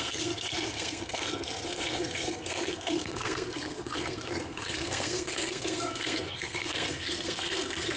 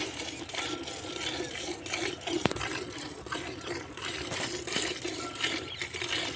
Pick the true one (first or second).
second